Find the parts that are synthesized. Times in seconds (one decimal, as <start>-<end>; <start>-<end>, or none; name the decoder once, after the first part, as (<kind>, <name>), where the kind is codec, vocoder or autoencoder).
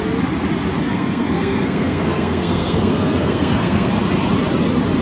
0.9-3.9 (codec, SNAC)